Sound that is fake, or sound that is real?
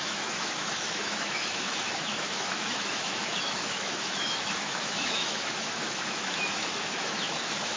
fake